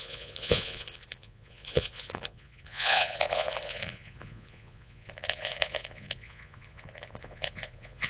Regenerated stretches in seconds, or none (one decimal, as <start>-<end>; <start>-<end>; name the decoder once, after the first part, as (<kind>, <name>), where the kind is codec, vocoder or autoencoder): 0.0-8.1 (vocoder, Vocos)